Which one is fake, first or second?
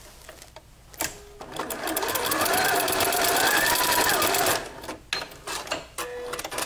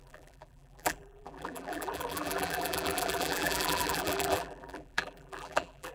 second